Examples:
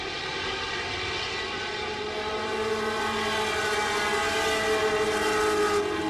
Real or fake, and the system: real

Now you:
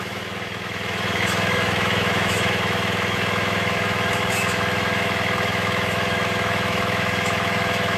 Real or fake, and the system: fake, autoencoder, DAC-VAE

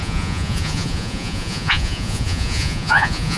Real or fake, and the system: fake, vocoder, Vocos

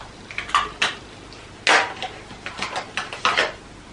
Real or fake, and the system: real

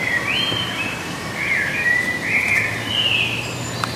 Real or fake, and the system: fake, vocoder, BigVGAN v2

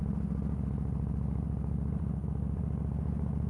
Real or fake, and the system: real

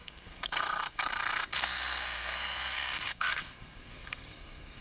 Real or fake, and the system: fake, codec, SNAC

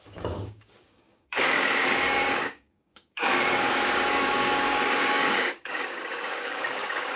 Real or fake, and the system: fake, codec, DAC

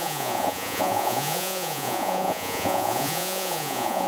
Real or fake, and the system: fake, vocoder, Vocos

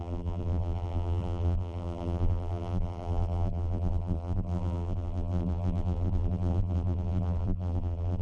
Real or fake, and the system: fake, vocoder, BigVGAN v2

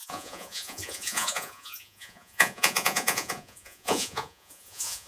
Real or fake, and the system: fake, vocoder, Vocos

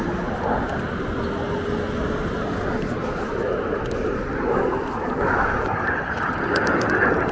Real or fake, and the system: real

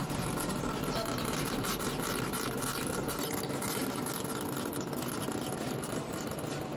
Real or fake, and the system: real